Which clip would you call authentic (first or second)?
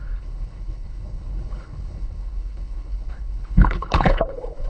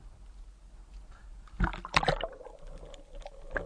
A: second